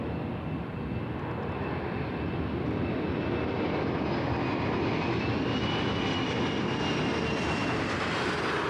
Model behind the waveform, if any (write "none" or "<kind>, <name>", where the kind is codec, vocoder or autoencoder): none